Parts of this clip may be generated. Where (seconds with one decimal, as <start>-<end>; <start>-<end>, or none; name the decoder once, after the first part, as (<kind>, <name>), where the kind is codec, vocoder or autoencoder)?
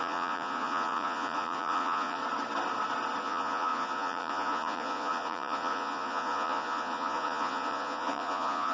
0.0-2.2 (vocoder, Vocos); 3.2-8.7